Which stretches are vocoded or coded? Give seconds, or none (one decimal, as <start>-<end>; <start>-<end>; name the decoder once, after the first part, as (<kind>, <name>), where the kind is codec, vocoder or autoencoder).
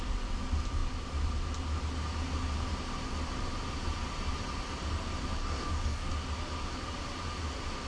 5.4-6.1 (codec, DAC)